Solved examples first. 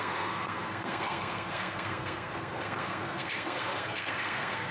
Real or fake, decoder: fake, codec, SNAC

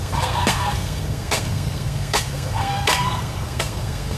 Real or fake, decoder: fake, codec, SNAC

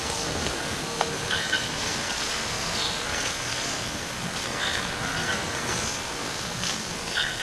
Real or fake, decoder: fake, codec, SNAC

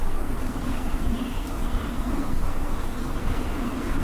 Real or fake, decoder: fake, codec, SNAC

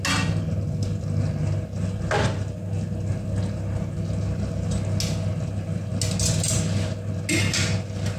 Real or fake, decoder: real